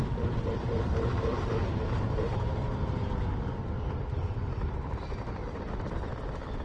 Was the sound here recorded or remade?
remade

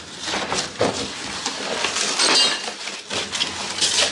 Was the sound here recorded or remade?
recorded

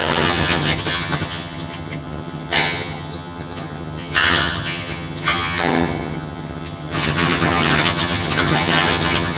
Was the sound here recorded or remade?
remade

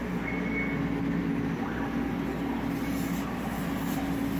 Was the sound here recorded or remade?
recorded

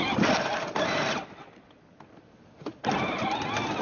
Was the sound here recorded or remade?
recorded